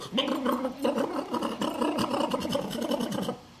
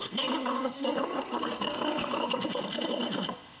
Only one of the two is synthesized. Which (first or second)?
second